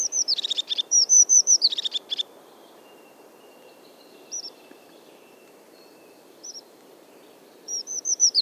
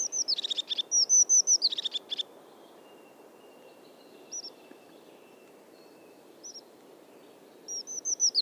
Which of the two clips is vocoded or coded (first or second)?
first